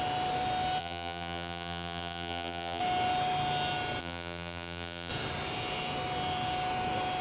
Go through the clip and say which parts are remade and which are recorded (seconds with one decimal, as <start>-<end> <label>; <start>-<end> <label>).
0.0-0.8 recorded; 0.8-2.8 remade; 2.8-4.0 recorded; 4.0-5.1 remade; 5.1-7.2 recorded